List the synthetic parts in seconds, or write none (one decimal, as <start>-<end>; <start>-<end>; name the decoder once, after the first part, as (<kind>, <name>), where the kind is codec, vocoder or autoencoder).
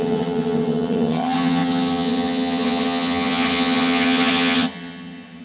0.0-5.4 (vocoder, HiFi-GAN)